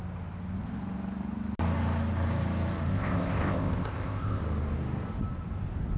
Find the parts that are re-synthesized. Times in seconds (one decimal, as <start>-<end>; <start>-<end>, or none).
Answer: 2.9-4.4